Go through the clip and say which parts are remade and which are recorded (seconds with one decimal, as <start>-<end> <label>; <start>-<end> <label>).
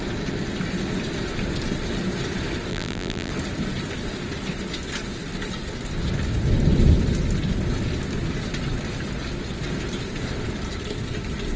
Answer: 0.0-2.7 recorded; 2.7-3.3 remade; 3.3-11.6 recorded